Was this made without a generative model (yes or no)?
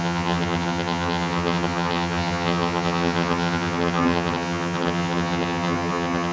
no